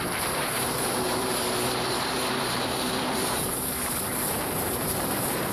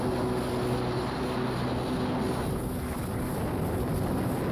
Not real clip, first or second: first